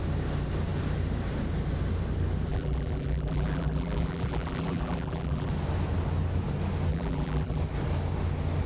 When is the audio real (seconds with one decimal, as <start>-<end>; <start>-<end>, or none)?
0.0-2.5; 5.5-6.9; 7.6-8.7